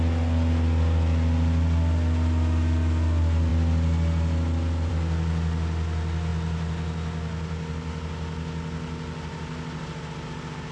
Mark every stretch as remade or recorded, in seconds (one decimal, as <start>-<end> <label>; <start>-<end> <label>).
0.0-10.7 recorded